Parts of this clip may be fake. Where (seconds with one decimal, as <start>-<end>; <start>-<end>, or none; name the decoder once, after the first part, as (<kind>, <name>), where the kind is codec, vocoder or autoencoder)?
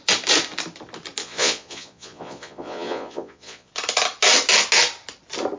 1.2-3.7 (vocoder, Vocos)